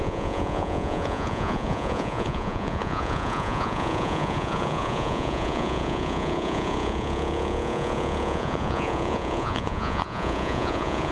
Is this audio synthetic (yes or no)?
yes